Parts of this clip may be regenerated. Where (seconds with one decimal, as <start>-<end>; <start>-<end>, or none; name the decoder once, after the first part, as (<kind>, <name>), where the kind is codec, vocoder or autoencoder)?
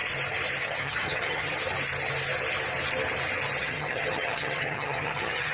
0.6-1.5 (vocoder, HiFi-GAN); 3.6-5.5